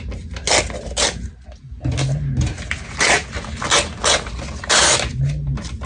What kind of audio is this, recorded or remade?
recorded